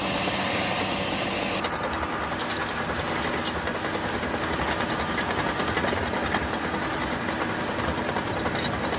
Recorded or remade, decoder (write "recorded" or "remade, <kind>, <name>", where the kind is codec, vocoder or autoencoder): recorded